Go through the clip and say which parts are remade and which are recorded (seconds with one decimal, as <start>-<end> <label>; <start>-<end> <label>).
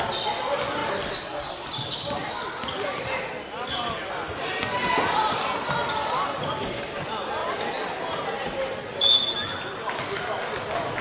0.0-11.0 recorded